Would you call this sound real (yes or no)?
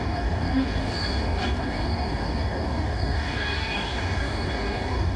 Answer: no